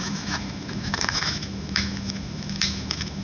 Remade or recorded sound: remade